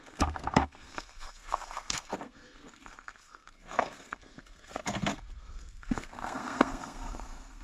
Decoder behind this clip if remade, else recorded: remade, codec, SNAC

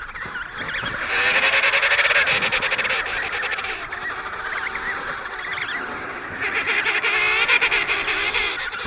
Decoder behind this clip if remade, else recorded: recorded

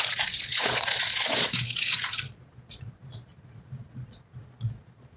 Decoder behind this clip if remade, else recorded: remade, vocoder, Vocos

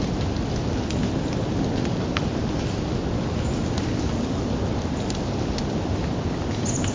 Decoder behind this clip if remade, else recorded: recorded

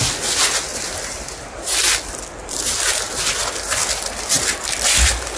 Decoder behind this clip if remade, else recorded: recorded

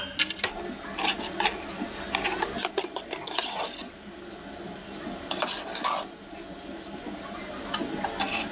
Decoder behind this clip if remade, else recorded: recorded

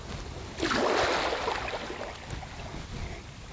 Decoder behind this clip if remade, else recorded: recorded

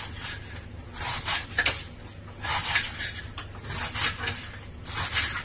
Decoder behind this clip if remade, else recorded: recorded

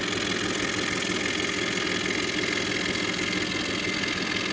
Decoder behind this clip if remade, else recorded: recorded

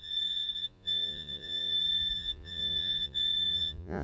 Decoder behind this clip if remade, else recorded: remade, vocoder, Vocos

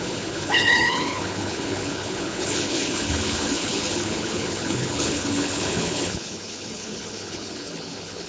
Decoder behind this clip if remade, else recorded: remade, codec, HILCodec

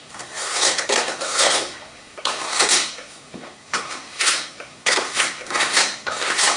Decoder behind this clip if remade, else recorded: remade, codec, SNAC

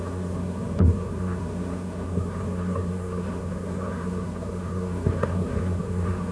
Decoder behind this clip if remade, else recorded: remade, codec, SNAC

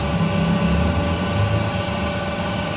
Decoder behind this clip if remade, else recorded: recorded